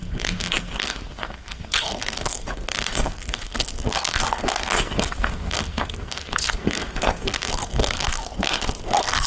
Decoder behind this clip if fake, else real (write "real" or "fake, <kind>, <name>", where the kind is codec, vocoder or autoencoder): fake, codec, SNAC